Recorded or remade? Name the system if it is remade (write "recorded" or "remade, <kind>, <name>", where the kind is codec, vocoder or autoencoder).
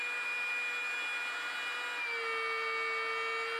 recorded